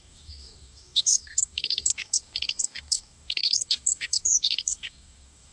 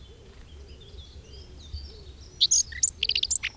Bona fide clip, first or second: second